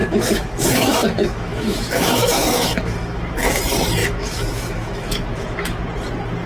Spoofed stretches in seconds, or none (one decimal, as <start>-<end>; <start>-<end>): 0.0-3.6; 4.0-5.8